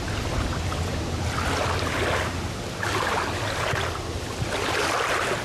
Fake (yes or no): no